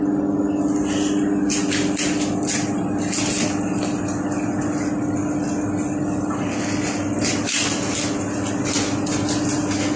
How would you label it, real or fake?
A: real